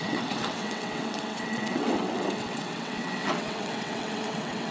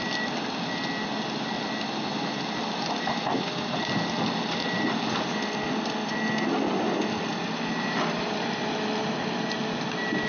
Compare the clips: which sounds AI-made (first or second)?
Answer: first